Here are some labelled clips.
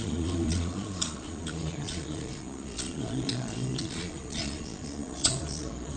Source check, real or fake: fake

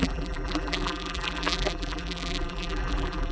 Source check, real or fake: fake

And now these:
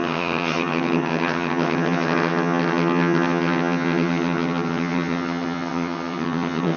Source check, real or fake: fake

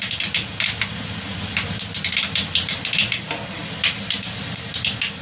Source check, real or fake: real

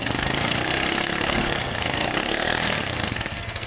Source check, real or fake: fake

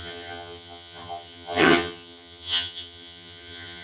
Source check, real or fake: fake